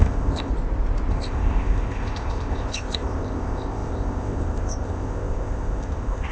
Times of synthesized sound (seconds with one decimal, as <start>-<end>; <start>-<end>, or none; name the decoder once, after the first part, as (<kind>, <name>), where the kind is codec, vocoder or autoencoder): 0.0-0.5 (codec, ZipCodec); 1.1-6.3